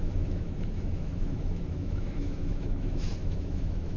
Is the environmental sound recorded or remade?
remade